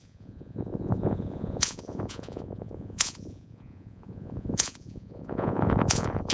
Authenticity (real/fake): fake